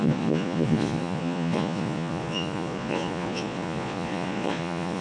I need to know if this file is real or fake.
fake